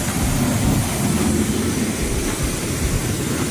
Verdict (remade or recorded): remade